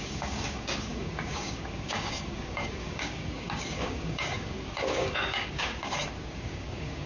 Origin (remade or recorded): remade